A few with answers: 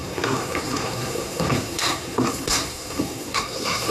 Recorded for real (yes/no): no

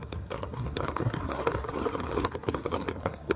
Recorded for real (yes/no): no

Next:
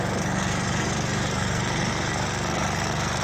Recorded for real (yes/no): no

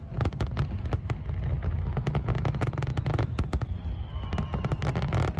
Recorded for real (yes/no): yes